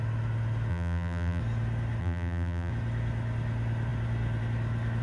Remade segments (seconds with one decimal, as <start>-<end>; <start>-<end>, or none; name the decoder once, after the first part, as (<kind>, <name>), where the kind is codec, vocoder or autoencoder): 0.7-1.4 (vocoder, BigVGAN v2); 2.0-2.7